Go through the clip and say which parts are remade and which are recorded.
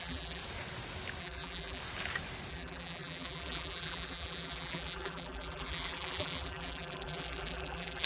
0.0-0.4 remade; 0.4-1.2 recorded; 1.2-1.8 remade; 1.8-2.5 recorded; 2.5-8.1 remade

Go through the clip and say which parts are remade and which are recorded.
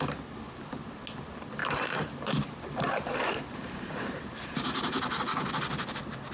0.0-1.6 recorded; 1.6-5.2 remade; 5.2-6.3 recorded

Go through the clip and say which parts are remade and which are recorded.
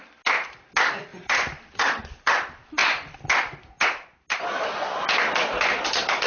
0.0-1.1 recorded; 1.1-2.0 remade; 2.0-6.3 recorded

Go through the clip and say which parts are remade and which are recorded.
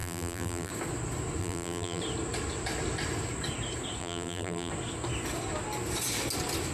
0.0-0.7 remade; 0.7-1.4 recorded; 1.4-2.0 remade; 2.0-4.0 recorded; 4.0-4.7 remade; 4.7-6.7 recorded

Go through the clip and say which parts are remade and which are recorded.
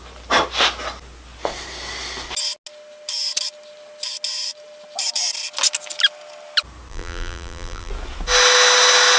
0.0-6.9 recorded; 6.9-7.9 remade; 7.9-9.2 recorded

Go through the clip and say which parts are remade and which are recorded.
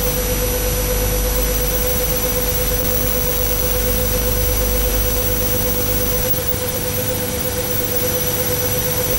0.0-6.3 recorded; 6.3-8.0 remade; 8.0-9.2 recorded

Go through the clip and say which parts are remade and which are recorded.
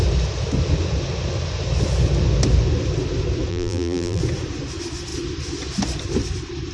0.0-3.5 recorded; 3.5-4.2 remade; 4.2-6.7 recorded